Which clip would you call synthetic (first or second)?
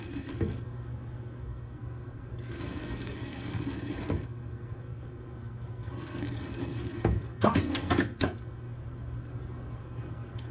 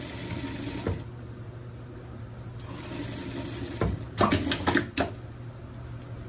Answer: first